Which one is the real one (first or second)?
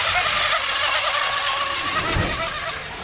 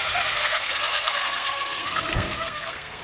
first